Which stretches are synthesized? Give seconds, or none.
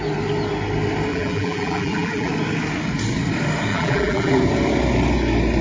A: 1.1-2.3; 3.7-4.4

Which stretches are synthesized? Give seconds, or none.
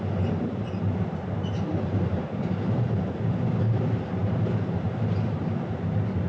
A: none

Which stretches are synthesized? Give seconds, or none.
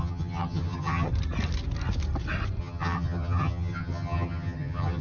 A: 0.0-1.1; 2.6-5.0